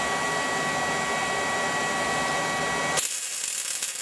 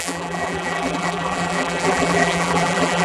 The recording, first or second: first